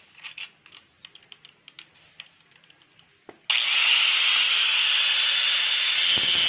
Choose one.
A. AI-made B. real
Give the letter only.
B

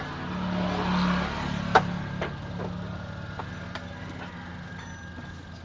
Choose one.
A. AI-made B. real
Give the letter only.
B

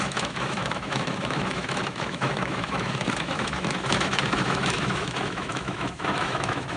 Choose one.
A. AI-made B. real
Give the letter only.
A